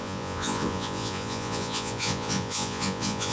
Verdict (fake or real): fake